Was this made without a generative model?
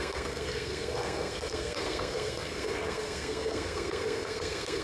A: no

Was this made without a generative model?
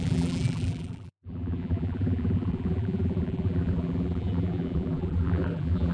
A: no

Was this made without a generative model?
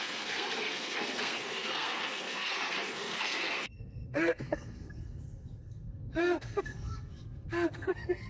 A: no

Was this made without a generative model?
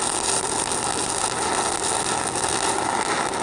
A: yes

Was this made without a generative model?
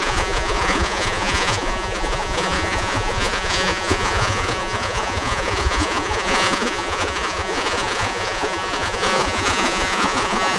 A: no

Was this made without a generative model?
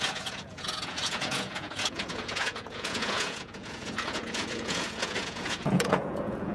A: no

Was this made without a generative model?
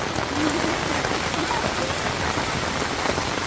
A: yes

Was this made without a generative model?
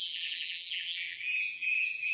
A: no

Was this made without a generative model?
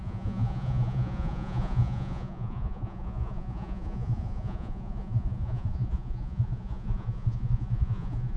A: no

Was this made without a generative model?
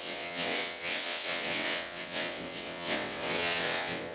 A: no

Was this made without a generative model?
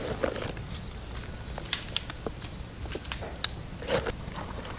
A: yes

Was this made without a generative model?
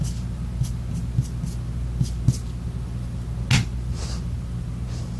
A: yes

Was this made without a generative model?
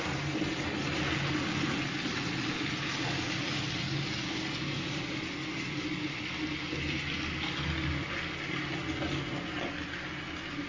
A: yes